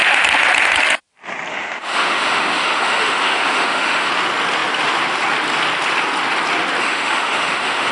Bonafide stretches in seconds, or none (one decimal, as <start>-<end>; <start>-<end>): 0.0-1.5; 4.1-6.8